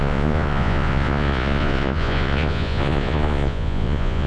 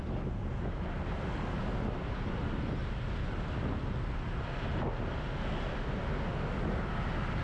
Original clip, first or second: second